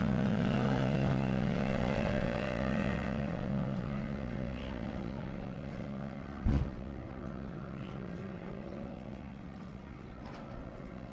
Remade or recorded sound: remade